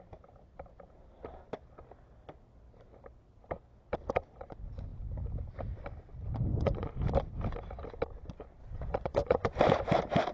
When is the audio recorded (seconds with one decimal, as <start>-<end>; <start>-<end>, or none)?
0.0-6.5; 7.0-8.6; 9.6-10.3